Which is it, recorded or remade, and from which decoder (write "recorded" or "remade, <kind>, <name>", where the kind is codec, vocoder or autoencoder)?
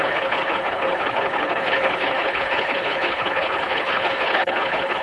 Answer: remade, codec, HILCodec